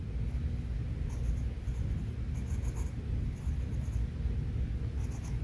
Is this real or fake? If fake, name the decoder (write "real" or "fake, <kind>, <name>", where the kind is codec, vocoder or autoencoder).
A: real